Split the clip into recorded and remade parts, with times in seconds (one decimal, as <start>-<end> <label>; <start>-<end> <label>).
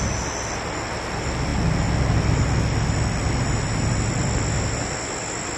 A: 0.0-5.6 recorded